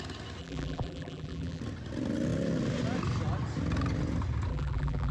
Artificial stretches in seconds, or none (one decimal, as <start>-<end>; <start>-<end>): 0.4-1.6; 4.5-5.1